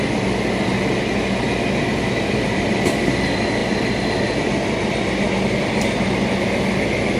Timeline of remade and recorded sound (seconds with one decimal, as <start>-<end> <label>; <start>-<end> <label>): 0.0-7.2 recorded